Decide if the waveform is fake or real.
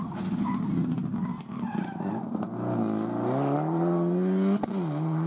real